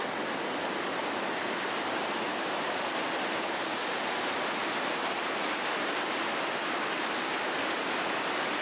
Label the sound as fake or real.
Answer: real